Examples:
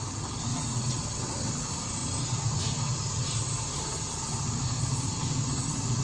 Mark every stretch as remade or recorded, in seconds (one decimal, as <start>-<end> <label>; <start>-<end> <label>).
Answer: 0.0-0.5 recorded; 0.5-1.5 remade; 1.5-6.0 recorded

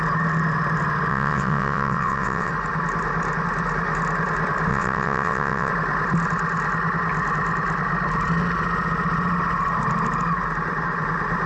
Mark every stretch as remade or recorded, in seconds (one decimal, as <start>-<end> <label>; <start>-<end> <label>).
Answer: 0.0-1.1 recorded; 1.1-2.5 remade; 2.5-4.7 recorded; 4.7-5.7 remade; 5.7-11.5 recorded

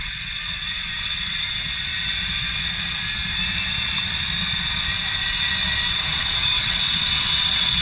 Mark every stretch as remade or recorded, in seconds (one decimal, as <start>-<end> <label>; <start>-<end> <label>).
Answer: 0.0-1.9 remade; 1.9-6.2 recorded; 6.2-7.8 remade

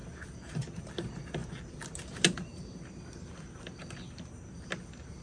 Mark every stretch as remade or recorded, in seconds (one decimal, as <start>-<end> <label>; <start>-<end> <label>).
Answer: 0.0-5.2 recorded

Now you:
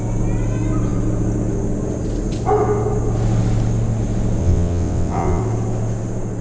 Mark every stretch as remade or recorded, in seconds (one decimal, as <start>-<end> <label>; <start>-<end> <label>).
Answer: 0.0-4.4 recorded; 4.4-5.4 remade; 5.4-6.4 recorded

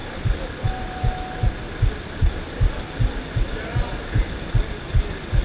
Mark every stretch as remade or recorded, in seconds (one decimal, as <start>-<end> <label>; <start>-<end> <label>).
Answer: 0.0-5.4 recorded